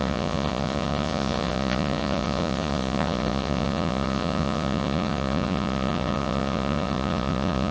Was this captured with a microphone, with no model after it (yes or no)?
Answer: no